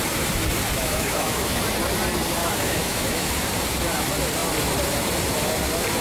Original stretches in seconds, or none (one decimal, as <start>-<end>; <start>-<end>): 0.0-0.8; 1.6-2.4; 3.3-6.0